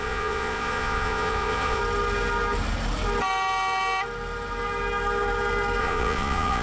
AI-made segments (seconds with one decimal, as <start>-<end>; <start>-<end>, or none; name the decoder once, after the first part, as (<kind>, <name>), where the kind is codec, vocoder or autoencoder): 0.0-1.8 (vocoder, Vocos); 5.8-6.6